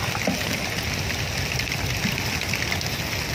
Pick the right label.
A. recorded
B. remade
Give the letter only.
A